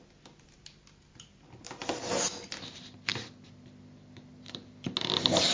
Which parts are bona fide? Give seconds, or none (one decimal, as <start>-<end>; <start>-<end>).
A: 0.0-5.5